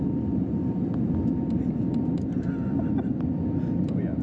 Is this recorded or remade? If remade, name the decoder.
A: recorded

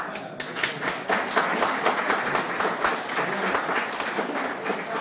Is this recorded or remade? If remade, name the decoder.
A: recorded